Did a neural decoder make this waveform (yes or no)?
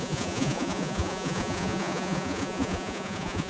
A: yes